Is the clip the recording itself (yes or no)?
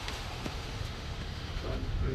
no